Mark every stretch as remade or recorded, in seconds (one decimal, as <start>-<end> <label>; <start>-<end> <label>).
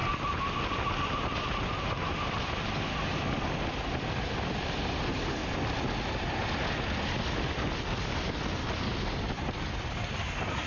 0.0-10.7 recorded